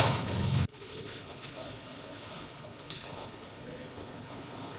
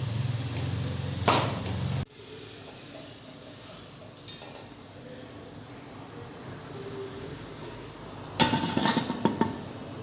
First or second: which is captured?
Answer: second